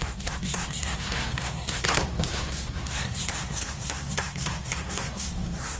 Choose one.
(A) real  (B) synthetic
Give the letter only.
B